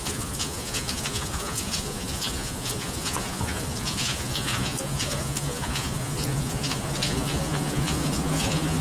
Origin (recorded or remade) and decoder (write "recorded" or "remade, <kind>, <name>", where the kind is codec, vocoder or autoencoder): remade, vocoder, Vocos